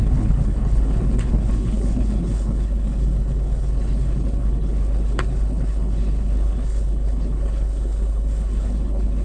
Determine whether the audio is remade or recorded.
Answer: remade